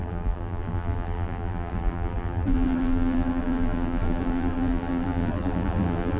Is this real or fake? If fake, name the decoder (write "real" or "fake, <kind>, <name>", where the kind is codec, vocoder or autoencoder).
fake, vocoder, BigVGAN v2